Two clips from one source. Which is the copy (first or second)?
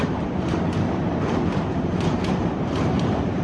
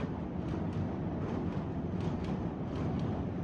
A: first